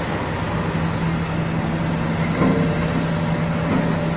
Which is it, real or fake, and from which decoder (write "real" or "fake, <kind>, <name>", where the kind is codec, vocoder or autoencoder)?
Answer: real